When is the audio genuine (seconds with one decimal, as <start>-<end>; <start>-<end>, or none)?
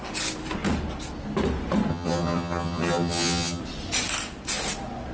0.0-1.9; 3.6-5.1